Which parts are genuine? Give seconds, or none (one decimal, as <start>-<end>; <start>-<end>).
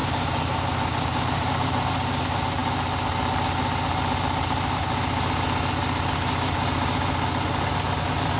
2.2-8.4